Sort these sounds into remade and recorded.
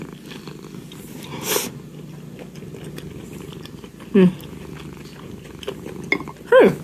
recorded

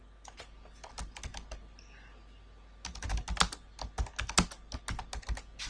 recorded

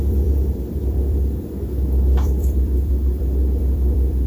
remade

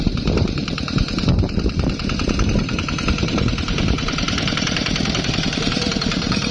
remade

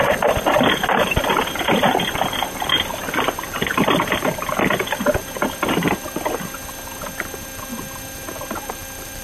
recorded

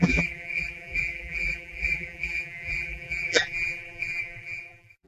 remade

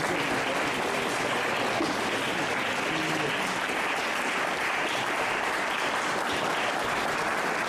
recorded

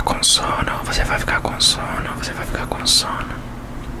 recorded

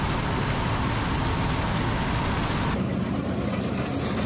recorded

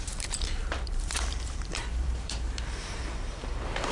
remade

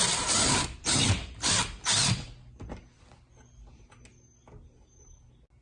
recorded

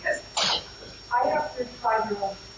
recorded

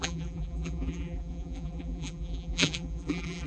remade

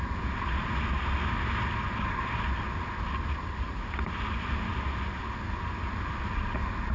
recorded